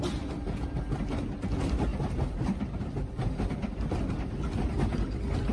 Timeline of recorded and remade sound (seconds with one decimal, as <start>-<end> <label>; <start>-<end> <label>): 0.0-5.5 recorded